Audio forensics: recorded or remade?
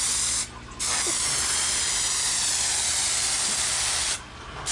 remade